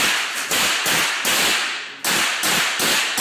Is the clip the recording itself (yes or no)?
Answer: yes